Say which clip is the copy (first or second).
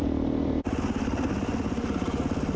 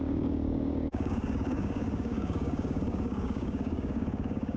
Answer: second